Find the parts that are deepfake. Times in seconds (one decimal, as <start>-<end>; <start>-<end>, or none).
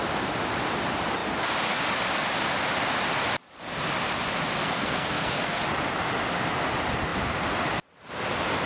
4.6-5.6